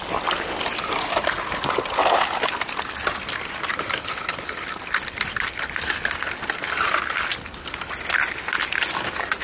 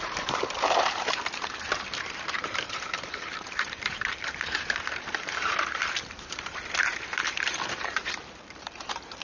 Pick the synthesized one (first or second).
second